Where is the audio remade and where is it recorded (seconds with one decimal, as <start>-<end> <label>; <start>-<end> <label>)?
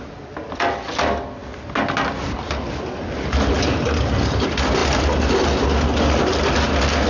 0.0-7.1 recorded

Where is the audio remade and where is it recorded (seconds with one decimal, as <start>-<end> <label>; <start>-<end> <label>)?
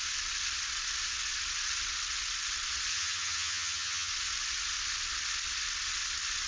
0.0-2.9 recorded; 2.9-4.1 remade; 4.1-6.5 recorded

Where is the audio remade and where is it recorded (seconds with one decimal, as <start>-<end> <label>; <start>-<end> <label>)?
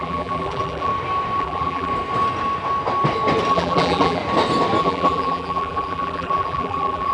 0.0-0.9 remade; 0.9-1.4 recorded; 1.4-1.9 remade; 1.9-3.5 recorded; 3.5-4.2 remade; 4.2-4.8 recorded; 4.8-7.1 remade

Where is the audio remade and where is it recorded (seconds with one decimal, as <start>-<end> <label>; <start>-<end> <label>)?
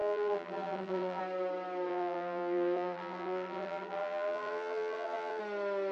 0.0-1.2 remade; 1.2-1.9 recorded; 1.9-5.4 remade; 5.4-5.9 recorded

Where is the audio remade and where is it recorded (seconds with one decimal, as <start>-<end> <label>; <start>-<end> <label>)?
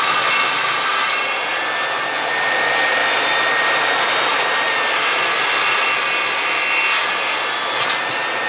0.0-8.5 recorded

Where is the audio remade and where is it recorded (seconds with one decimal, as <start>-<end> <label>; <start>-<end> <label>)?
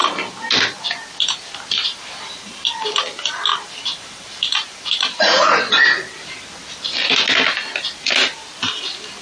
0.0-1.9 recorded; 1.9-3.0 remade; 3.0-3.5 recorded; 3.5-5.4 remade; 5.4-9.2 recorded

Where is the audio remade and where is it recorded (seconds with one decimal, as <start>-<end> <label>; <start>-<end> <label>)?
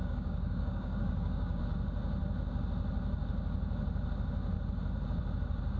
0.0-1.6 remade; 1.6-5.8 recorded